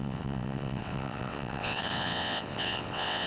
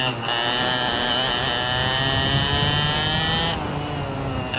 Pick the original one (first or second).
second